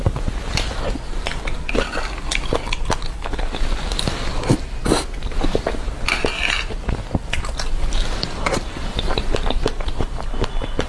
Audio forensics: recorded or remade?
recorded